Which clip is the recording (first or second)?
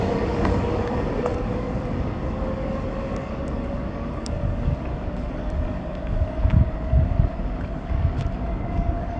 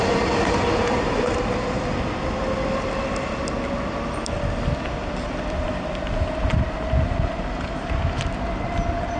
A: second